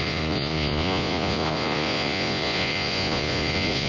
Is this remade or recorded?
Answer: remade